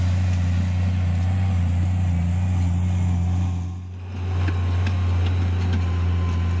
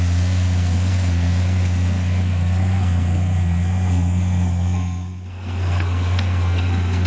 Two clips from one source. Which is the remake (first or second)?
second